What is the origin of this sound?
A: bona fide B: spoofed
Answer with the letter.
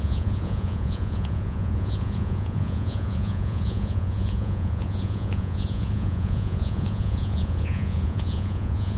B